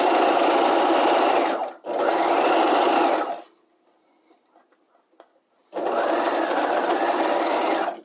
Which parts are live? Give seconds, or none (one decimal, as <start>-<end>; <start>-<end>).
0.0-8.0